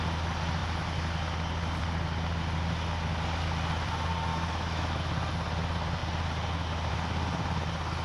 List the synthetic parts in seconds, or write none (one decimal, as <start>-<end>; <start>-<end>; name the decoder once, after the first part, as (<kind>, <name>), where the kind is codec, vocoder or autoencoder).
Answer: 4.3-5.0 (autoencoder, DAC-VAE)